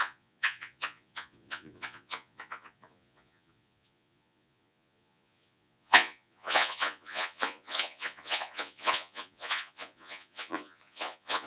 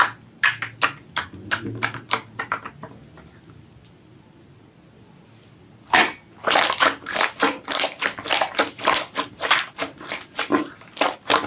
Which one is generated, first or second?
first